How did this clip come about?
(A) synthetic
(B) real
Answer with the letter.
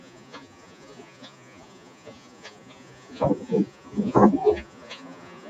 A